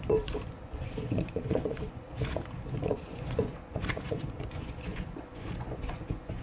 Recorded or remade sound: remade